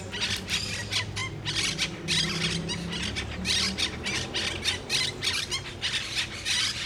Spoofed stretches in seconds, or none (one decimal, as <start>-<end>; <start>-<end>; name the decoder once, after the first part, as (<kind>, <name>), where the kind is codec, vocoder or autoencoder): none